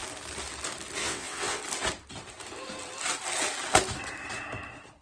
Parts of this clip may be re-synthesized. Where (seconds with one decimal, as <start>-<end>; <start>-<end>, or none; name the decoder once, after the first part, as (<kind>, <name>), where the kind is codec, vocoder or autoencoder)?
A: 1.0-1.6 (vocoder, WaveNeXt)